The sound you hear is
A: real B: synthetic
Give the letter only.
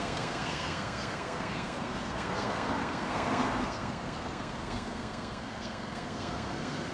B